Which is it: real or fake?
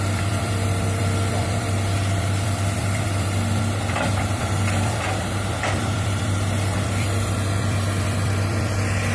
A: fake